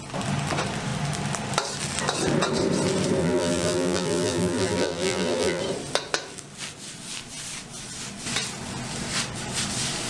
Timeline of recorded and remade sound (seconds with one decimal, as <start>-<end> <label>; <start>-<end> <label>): 0.0-3.2 recorded; 3.2-5.6 remade; 5.6-10.1 recorded